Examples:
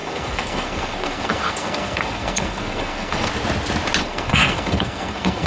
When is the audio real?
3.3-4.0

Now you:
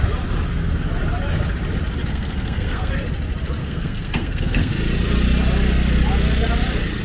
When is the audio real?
0.0-2.1; 2.9-3.6; 4.7-7.0

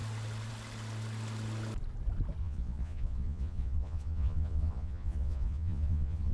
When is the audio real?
0.0-2.4